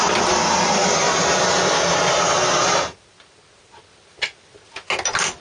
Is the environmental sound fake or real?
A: real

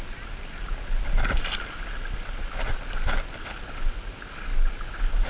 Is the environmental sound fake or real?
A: real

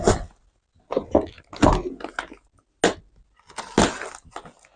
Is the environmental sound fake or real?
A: real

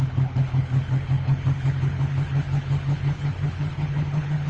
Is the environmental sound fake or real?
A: fake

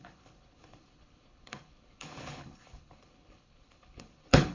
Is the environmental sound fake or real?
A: fake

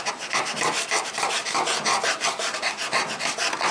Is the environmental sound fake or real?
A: real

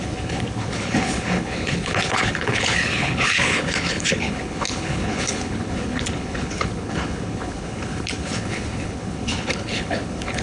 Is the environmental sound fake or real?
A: fake